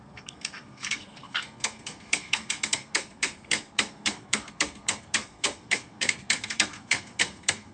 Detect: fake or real fake